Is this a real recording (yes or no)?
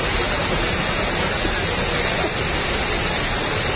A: yes